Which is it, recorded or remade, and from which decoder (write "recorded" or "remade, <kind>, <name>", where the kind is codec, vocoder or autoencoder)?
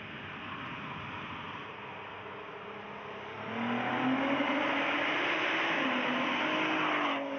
recorded